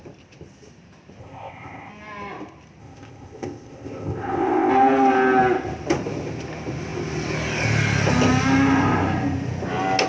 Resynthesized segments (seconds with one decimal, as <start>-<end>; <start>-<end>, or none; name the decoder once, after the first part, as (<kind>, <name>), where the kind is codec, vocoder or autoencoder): 1.2-1.9 (codec, ZipCodec); 2.8-4.7